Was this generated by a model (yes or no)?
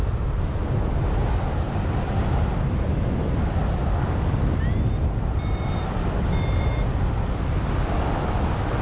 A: no